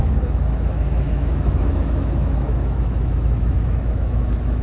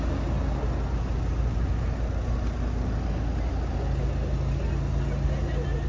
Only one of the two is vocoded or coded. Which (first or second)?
first